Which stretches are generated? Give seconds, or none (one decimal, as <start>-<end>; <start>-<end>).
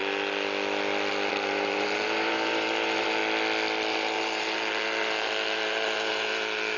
1.3-3.2; 3.9-6.8